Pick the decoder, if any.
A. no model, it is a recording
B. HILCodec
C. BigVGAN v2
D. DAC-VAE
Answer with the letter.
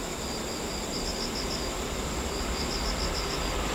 A